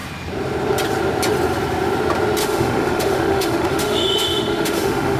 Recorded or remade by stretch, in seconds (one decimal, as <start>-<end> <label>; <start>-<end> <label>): 0.0-2.4 recorded; 2.4-5.2 remade